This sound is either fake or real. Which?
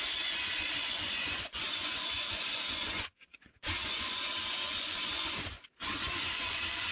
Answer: fake